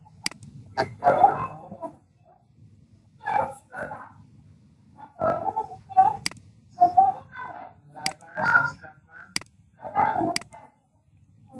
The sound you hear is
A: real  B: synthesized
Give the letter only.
A